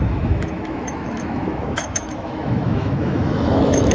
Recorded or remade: remade